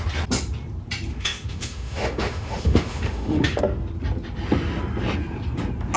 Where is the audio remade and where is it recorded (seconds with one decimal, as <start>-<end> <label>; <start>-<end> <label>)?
0.0-1.1 recorded; 1.1-3.6 remade; 3.6-6.0 recorded